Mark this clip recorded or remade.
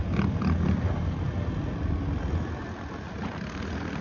recorded